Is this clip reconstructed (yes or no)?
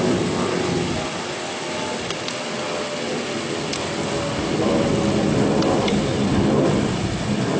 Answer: no